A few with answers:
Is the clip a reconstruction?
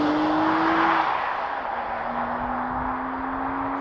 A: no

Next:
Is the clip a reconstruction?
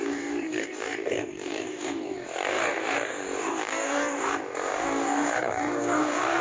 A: yes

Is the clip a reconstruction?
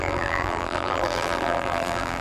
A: yes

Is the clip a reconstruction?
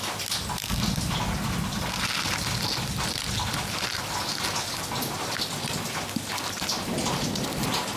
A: no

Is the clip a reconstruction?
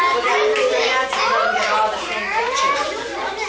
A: no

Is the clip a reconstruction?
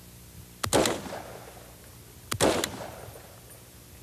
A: no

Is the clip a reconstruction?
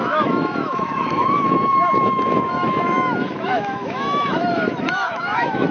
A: yes